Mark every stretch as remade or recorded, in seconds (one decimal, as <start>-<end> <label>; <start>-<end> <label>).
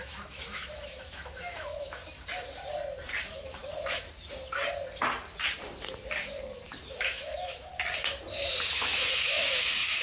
0.0-2.0 remade; 2.0-3.2 recorded; 3.2-3.6 remade; 3.6-6.9 recorded; 6.9-7.7 remade; 7.7-8.7 recorded; 8.7-10.0 remade